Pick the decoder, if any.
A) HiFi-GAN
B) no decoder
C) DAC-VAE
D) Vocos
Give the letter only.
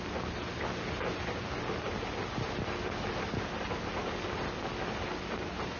B